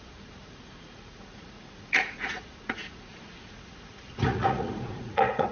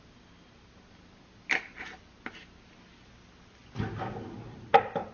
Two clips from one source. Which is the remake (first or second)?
first